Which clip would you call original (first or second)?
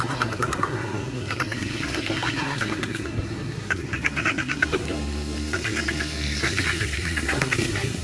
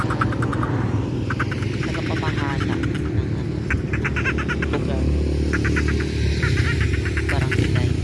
second